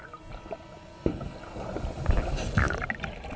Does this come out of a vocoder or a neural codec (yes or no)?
no